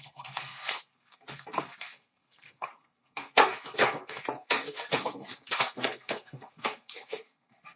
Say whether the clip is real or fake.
fake